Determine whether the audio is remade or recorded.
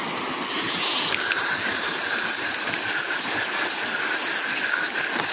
recorded